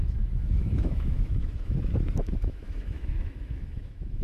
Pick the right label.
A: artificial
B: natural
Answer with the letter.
A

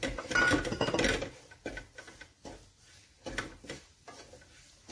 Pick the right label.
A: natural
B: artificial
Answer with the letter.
A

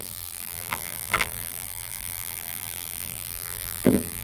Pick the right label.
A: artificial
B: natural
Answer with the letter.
A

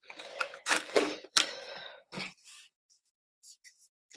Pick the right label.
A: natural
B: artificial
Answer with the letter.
B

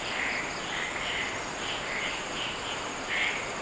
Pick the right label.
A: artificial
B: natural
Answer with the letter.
B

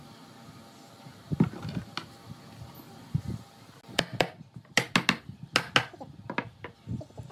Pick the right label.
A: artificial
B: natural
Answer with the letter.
B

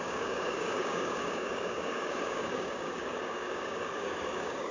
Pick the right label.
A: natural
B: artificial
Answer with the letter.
B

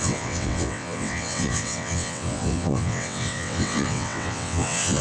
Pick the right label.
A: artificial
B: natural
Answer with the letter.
A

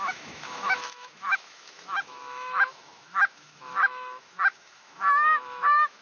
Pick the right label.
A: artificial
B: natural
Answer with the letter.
A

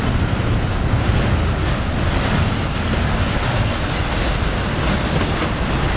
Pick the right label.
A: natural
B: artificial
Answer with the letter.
A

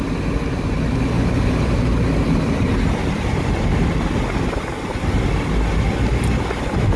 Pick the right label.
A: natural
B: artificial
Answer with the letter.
A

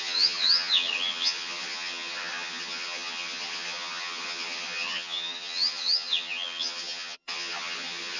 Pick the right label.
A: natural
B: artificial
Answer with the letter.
B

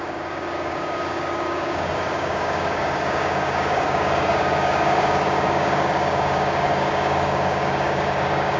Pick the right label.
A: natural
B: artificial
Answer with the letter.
B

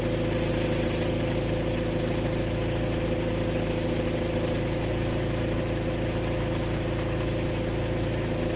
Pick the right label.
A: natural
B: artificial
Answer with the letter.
A